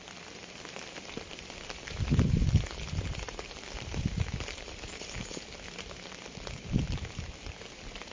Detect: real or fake fake